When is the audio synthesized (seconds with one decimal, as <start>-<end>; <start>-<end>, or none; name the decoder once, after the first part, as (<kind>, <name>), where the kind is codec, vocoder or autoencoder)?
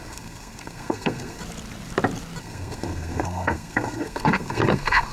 0.0-1.4 (codec, SNAC); 2.4-5.1